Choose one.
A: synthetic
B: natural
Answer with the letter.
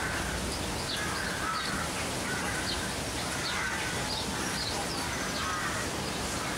B